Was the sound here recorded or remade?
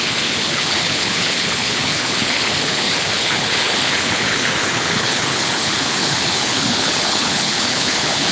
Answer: remade